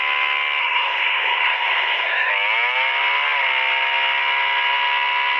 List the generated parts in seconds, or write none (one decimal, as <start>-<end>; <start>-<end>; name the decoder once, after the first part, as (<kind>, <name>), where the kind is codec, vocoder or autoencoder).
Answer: 0.6-2.3 (codec, SNAC)